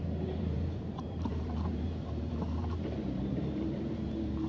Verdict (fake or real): fake